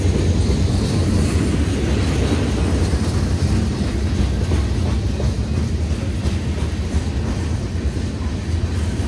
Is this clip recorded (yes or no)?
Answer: yes